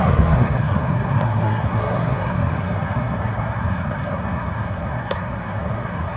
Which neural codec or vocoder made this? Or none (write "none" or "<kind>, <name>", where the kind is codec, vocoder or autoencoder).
codec, SNAC